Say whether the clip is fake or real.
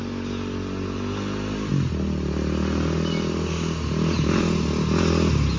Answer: real